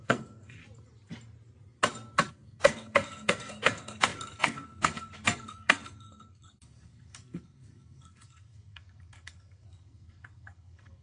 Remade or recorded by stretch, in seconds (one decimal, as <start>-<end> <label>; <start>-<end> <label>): 0.0-0.6 remade; 0.6-2.3 recorded; 2.3-11.0 remade